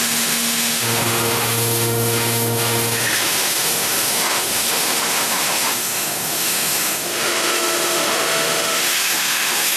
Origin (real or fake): fake